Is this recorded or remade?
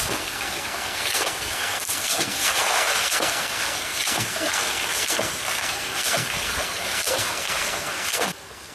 remade